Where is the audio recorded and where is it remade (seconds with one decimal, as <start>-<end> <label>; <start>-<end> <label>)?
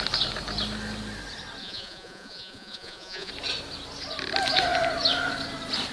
0.0-1.6 recorded; 1.6-3.3 remade; 3.3-5.9 recorded